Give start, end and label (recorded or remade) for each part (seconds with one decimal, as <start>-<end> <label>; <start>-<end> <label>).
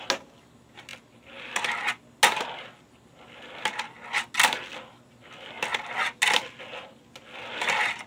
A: 0.0-8.1 recorded